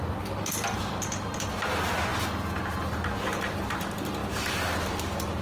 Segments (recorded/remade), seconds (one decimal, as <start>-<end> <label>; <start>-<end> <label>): 0.0-5.4 recorded